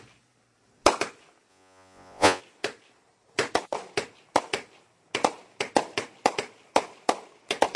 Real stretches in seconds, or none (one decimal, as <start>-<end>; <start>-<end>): 0.0-1.5; 2.4-7.8